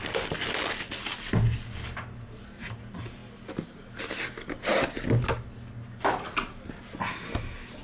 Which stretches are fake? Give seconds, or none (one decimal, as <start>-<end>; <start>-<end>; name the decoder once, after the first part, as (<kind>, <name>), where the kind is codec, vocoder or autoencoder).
none